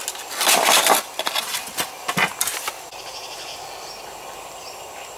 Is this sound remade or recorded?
recorded